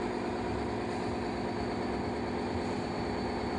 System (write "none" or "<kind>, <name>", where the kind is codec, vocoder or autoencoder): none